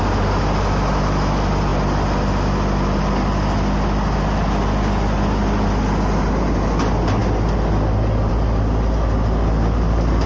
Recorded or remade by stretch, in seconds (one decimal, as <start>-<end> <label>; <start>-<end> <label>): 0.0-10.3 recorded